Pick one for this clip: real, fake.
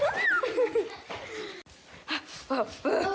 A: real